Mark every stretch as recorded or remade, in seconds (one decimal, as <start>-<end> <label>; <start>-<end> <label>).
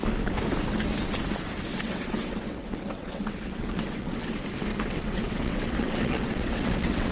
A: 0.0-1.7 recorded; 1.7-4.3 remade; 4.3-4.7 recorded; 4.7-7.1 remade